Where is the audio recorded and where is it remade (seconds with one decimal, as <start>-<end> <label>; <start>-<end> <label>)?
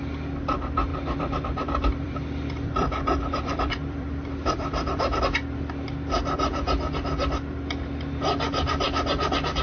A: 0.0-0.9 recorded; 0.9-5.2 remade; 5.2-9.6 recorded